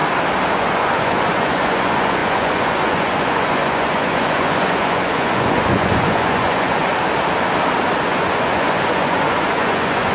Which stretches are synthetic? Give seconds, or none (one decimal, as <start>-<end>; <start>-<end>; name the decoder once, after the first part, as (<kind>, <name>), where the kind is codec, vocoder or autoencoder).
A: 0.5-6.9 (vocoder, Vocos); 8.0-10.1